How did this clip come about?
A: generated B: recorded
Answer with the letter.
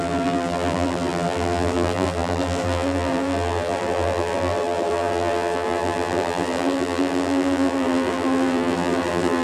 A